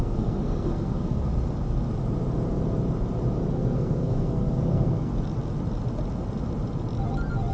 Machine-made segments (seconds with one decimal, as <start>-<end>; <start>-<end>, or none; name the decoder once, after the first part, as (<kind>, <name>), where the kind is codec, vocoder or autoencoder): 0.0-1.3 (codec, SNAC); 3.5-5.1